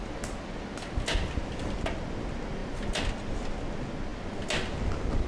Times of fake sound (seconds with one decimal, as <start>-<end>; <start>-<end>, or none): none